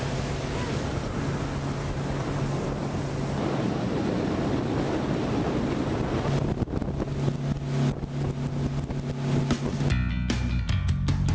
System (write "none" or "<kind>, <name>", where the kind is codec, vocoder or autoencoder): none